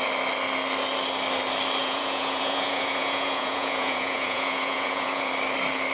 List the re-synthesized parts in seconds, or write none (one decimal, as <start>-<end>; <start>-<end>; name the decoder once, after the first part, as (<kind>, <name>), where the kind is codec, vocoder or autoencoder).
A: 1.8-5.3 (vocoder, Vocos)